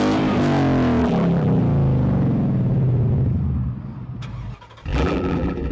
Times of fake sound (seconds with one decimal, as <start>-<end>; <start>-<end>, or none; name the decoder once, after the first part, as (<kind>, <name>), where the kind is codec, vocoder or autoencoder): 1.0-1.6 (vocoder, BigVGAN v2); 4.9-5.7

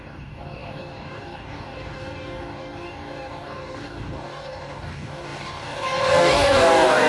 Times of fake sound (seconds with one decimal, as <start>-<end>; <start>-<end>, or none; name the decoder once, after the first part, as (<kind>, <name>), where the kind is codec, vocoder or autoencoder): 0.0-7.1 (codec, DAC)

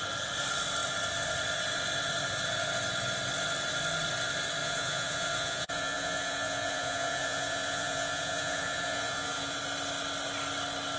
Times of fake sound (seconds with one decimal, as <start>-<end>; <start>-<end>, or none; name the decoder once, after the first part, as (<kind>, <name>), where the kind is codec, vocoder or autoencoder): 4.6-9.6 (vocoder, Vocos)

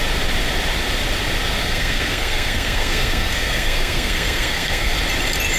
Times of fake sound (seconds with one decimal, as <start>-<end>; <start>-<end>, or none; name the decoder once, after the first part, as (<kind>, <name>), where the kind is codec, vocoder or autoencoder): 1.6-5.0 (codec, SNAC)

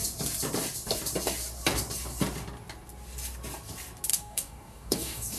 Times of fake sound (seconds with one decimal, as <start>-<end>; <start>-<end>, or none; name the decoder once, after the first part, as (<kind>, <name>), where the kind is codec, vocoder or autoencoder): 4.1-5.4 (codec, DAC)

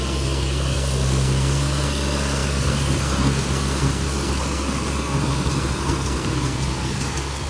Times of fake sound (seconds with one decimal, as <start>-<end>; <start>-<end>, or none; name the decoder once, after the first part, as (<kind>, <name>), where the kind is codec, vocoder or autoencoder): 0.0-7.5 (codec, SNAC)

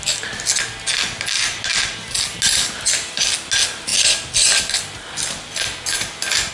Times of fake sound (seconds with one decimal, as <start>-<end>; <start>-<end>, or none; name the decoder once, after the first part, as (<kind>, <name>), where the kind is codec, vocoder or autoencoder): none

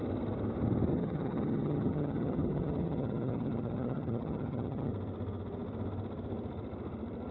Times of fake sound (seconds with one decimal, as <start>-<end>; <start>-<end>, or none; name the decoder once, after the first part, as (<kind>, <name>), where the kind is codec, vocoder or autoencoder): 0.9-4.9 (vocoder, HiFi-GAN)